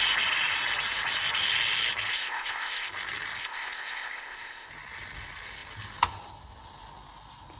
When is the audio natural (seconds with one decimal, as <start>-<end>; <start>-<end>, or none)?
0.0-2.1; 2.9-3.4; 4.7-7.6